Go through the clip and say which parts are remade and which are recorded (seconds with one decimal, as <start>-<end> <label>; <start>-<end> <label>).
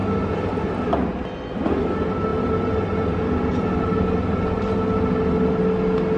0.0-6.2 recorded